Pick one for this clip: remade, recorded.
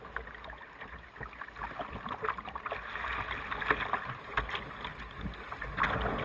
recorded